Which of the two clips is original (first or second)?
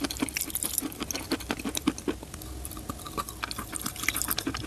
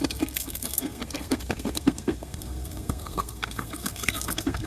first